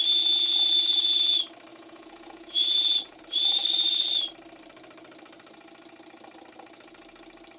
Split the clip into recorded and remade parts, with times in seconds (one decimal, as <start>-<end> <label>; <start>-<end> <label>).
0.0-1.7 recorded; 1.7-3.2 remade; 3.2-7.6 recorded